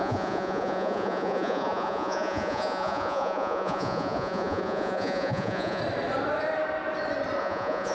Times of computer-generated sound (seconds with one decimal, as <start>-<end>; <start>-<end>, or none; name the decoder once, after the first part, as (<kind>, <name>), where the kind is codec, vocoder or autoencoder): 0.0-5.8 (vocoder, Vocos); 7.4-7.9